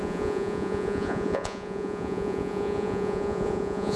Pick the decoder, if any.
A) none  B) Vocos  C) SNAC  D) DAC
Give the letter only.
B